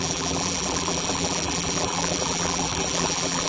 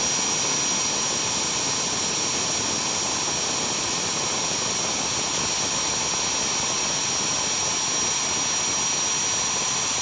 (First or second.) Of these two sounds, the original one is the second